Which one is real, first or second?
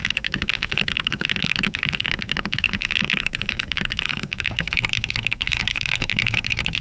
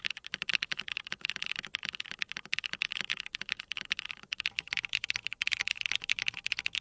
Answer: second